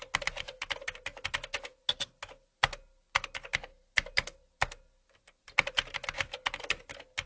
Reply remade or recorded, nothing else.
recorded